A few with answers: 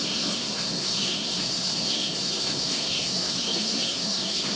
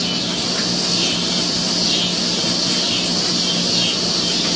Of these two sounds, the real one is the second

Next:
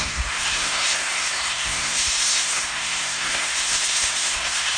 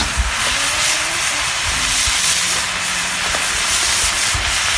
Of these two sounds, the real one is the second